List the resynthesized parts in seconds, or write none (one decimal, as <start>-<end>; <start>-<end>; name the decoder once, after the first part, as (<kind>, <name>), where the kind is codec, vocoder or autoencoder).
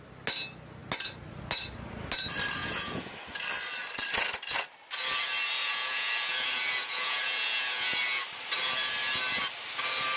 2.6-3.1 (vocoder, Vocos); 5.6-8.0